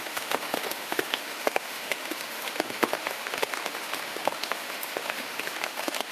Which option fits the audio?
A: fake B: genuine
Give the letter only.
A